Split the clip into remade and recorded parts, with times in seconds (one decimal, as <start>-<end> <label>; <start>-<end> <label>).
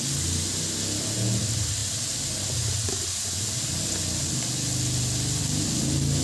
0.0-6.2 recorded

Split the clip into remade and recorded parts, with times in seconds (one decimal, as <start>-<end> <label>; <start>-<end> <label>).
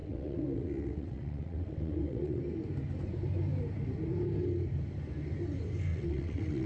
0.0-2.4 remade; 2.4-5.9 recorded; 5.9-6.7 remade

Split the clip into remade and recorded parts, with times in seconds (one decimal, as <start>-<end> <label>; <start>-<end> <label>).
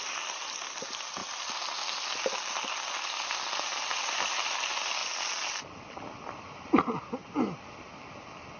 0.0-8.6 recorded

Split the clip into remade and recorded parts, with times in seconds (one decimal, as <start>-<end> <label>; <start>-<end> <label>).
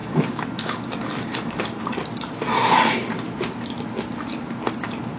0.0-0.8 remade; 0.8-1.3 recorded; 1.3-1.9 remade; 1.9-2.6 recorded; 2.6-3.1 remade; 3.1-5.2 recorded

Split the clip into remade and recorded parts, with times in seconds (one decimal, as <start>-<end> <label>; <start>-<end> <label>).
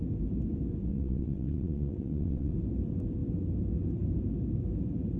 0.0-0.9 recorded; 0.9-2.5 remade; 2.5-5.2 recorded